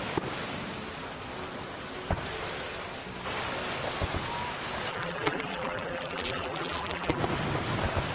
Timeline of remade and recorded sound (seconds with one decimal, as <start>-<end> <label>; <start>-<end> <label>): 0.0-4.9 recorded; 4.9-7.2 remade; 7.2-8.1 recorded